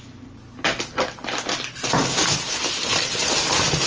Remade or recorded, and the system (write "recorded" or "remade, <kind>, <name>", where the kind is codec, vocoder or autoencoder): recorded